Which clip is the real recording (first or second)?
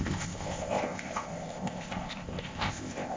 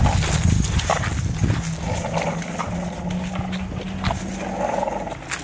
second